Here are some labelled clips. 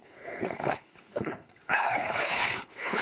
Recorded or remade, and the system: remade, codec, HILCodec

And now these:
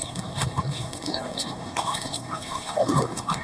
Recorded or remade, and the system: remade, codec, SNAC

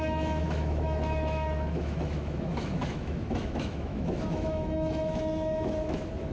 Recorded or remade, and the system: remade, autoencoder, DAC-VAE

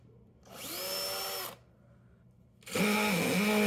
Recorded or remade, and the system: recorded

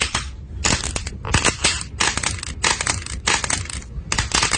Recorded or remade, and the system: recorded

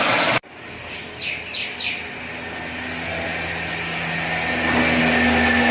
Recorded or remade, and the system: recorded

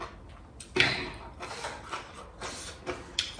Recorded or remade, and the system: recorded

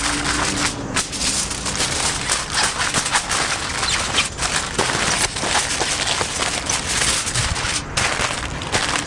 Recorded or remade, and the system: recorded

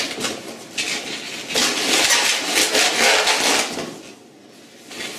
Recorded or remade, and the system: recorded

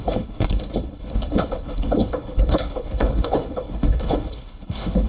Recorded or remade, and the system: remade, codec, HILCodec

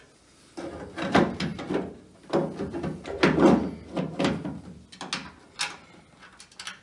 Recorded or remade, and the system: recorded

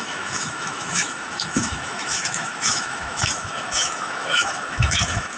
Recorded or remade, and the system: remade, autoencoder, DAC-VAE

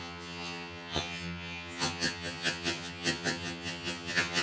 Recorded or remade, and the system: remade, vocoder, HiFi-GAN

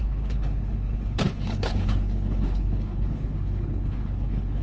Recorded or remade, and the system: remade, codec, HILCodec